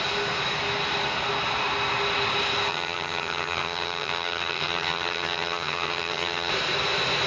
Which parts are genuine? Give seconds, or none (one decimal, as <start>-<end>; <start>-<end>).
0.0-2.7; 6.5-7.3